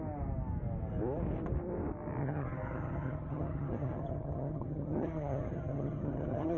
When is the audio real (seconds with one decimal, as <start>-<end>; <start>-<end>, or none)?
0.0-2.2